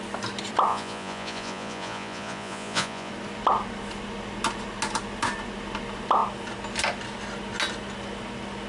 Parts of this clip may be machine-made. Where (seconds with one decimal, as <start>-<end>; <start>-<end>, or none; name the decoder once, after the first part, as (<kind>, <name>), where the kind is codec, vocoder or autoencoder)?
0.7-3.1 (vocoder, Vocos)